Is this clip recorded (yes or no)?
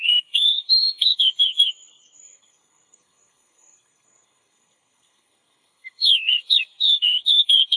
no